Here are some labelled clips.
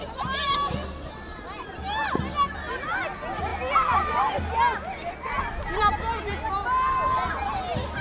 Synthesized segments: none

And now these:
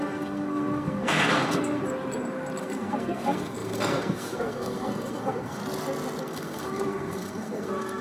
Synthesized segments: 0.0-1.8 (codec, SNAC); 2.6-5.6; 6.2-8.0

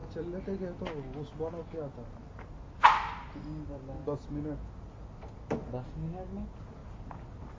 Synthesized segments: none

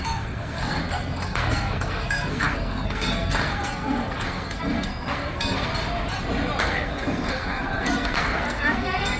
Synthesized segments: 0.0-5.7 (codec, SNAC); 6.6-9.2

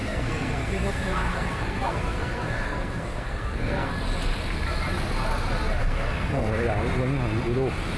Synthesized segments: 0.0-3.9 (codec, SNAC); 5.8-6.5

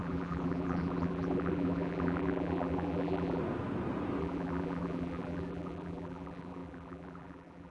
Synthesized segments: 0.0-3.4 (vocoder, BigVGAN v2); 4.2-7.7